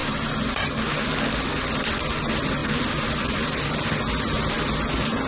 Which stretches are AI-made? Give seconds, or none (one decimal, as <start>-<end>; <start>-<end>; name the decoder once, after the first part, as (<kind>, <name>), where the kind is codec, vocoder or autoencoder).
none